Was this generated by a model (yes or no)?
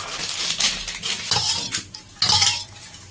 no